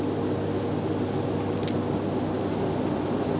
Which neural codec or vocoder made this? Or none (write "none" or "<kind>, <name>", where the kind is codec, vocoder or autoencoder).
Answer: none